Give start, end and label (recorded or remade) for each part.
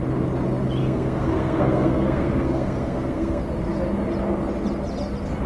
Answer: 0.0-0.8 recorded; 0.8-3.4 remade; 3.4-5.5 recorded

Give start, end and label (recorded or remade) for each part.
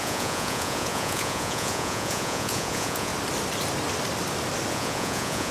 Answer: 0.0-3.1 remade; 3.1-4.7 recorded; 4.7-5.5 remade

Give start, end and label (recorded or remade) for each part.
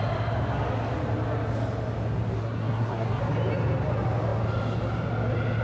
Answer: 0.0-2.4 recorded; 2.4-3.2 remade; 3.2-5.6 recorded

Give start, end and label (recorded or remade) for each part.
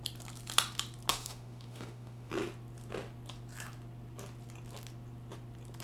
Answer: 0.0-1.1 recorded; 1.1-2.3 remade; 2.3-5.8 recorded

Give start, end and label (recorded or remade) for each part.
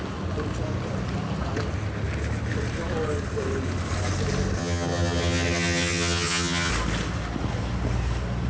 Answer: 0.0-4.6 recorded; 4.6-6.7 remade; 6.7-8.5 recorded